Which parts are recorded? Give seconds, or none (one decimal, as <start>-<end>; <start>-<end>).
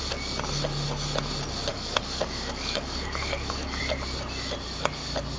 0.0-1.7; 3.8-5.4